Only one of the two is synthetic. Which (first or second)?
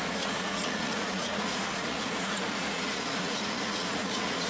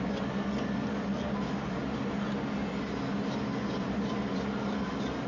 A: first